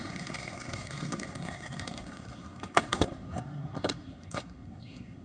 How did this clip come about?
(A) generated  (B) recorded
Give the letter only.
A